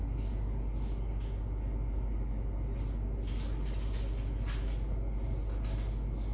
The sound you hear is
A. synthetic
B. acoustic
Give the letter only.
B